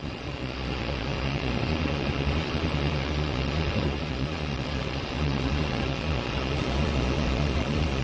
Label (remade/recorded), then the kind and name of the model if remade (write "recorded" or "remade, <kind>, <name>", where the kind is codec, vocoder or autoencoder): remade, vocoder, Vocos